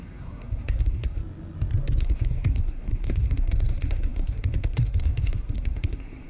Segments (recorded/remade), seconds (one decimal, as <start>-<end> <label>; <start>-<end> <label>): 0.0-1.2 remade; 1.2-2.0 recorded; 2.0-6.3 remade